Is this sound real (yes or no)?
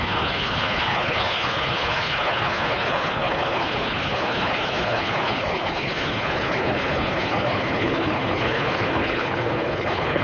no